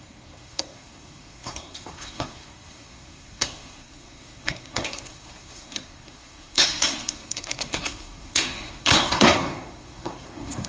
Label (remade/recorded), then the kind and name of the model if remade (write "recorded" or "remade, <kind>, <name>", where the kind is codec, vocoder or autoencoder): remade, codec, SNAC